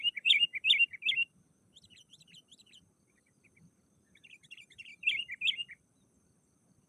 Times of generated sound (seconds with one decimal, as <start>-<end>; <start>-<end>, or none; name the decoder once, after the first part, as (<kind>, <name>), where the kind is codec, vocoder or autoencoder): 0.0-0.5 (vocoder, BigVGAN v2); 1.6-4.9; 6.0-6.9